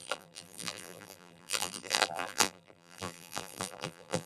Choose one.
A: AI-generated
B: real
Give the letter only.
A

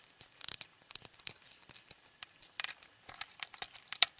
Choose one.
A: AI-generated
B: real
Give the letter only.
A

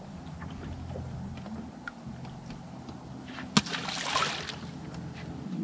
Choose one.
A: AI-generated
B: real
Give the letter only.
B